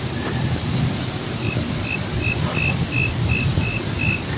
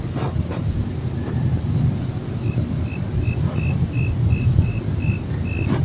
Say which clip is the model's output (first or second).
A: first